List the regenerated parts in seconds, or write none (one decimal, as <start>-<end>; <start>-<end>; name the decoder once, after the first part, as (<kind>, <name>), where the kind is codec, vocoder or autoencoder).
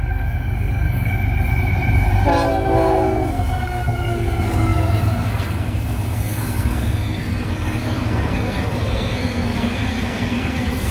0.0-1.1 (codec, SNAC); 2.5-10.9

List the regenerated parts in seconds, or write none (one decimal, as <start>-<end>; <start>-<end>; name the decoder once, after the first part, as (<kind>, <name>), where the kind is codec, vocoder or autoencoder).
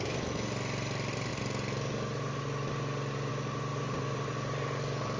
3.7-5.2 (vocoder, BigVGAN v2)